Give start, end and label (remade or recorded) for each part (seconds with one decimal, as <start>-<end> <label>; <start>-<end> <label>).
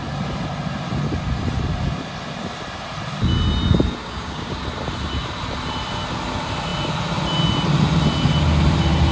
0.0-4.0 recorded; 4.0-4.6 remade; 4.6-9.1 recorded